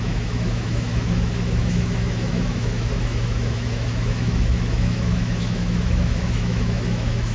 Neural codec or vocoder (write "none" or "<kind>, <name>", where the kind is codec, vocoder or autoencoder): autoencoder, DAC-VAE